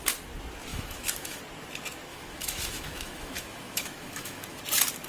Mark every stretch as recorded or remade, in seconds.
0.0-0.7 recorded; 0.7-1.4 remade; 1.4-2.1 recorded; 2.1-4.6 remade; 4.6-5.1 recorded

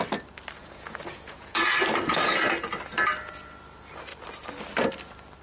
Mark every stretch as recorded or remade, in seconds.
0.0-0.6 recorded; 0.6-1.7 remade; 1.7-5.4 recorded